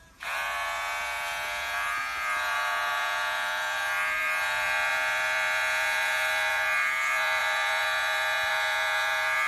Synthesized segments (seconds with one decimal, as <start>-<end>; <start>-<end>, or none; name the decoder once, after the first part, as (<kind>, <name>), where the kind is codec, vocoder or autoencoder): 0.0-9.5 (vocoder, Vocos)